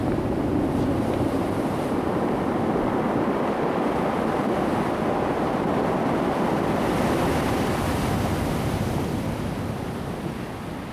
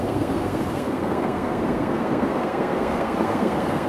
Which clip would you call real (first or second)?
first